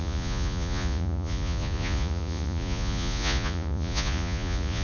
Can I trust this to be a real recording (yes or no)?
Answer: no